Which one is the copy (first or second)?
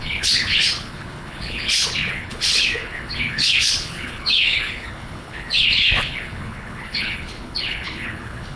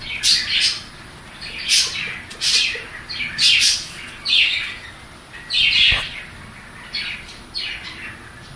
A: first